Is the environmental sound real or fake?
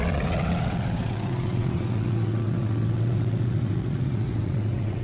fake